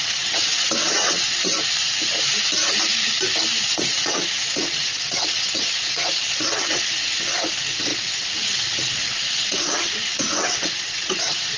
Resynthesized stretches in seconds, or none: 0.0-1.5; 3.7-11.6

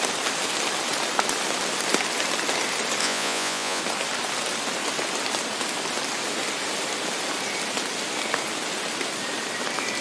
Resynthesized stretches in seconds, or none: 3.0-3.8

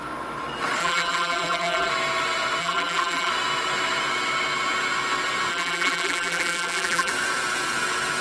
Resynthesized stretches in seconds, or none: 0.8-1.9; 2.6-3.3; 5.5-7.1